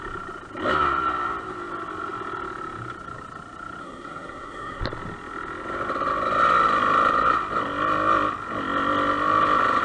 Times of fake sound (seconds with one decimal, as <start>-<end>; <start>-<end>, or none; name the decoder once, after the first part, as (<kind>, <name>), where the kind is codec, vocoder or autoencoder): 3.8-4.8 (codec, SNAC)